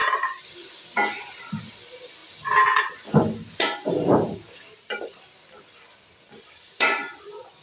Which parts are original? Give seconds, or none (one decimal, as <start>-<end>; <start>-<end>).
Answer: 2.2-2.8